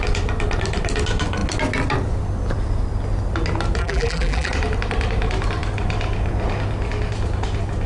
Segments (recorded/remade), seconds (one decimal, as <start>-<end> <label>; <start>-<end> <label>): 0.0-3.8 recorded; 3.8-4.5 remade; 4.5-7.9 recorded